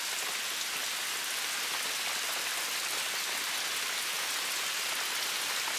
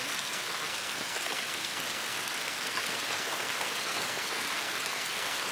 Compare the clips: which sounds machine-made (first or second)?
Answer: second